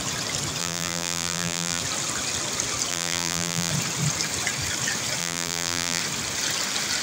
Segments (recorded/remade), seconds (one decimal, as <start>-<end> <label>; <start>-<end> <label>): 0.0-0.6 recorded; 0.6-1.8 remade; 1.8-2.9 recorded; 2.9-3.7 remade; 3.7-5.2 recorded; 5.2-6.0 remade; 6.0-7.0 recorded